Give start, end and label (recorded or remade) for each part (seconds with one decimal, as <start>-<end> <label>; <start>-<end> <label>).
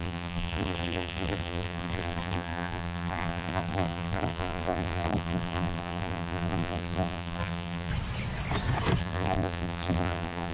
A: 0.0-7.9 remade; 7.9-9.0 recorded; 9.0-10.5 remade